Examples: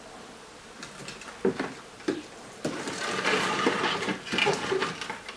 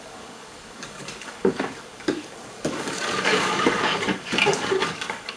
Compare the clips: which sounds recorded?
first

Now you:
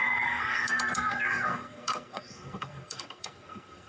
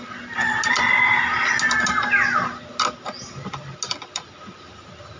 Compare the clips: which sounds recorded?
second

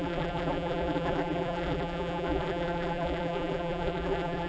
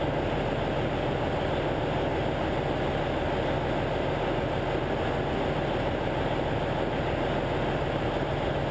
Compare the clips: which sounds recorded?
second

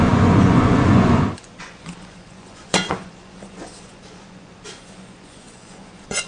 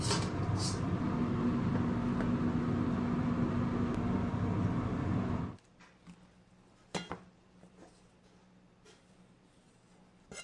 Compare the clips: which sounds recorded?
second